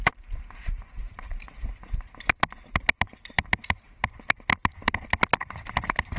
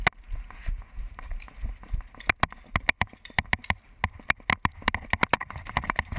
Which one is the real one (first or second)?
second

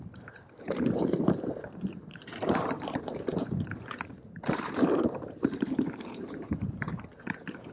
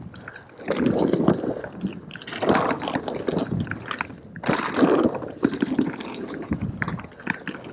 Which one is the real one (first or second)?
second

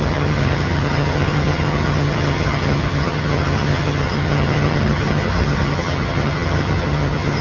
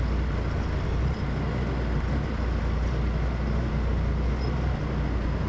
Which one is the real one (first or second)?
second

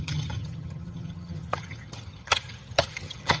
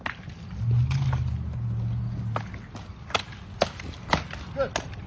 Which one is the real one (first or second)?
second